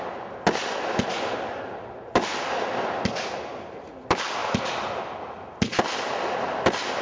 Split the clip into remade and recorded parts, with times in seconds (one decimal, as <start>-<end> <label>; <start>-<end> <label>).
0.0-7.0 recorded

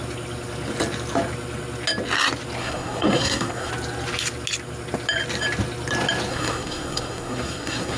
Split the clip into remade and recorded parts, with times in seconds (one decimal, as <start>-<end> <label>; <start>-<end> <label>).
0.0-2.6 recorded; 2.6-3.7 remade; 3.7-6.3 recorded; 6.3-8.0 remade

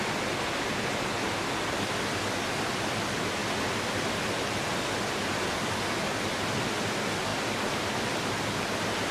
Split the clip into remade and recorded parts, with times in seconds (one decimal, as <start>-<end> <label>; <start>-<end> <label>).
0.0-9.1 recorded